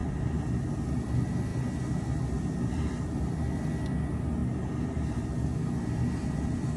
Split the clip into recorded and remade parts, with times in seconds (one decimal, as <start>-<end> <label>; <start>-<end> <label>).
0.0-4.4 remade; 4.4-5.8 recorded; 5.8-6.8 remade